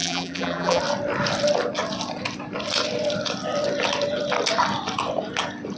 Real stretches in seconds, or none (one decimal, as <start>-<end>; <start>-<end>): 0.8-5.8